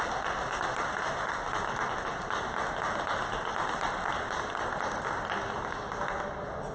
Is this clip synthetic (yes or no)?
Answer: no